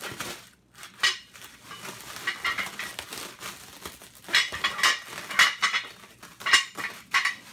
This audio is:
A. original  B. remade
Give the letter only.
A